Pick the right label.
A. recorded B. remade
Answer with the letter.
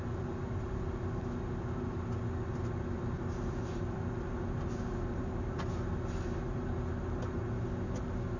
A